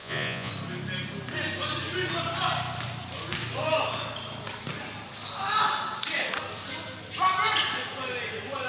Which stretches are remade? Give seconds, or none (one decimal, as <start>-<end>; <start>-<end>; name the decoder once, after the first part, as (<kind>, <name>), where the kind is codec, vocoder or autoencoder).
0.0-0.5 (vocoder, Vocos)